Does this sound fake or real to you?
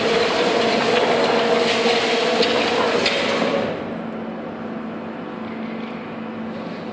real